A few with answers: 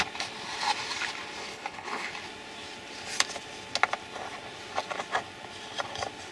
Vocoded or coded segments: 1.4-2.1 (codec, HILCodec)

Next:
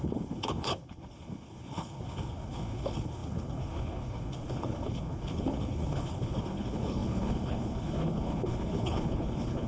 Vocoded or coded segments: 0.0-9.7 (codec, HILCodec)

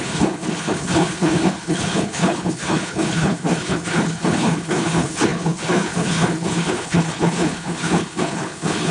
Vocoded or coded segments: 0.0-8.9 (codec, HILCodec)